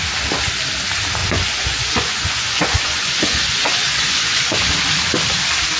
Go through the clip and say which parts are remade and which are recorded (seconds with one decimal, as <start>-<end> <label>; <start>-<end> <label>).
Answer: 0.0-1.2 recorded; 1.2-4.7 remade; 4.7-5.8 recorded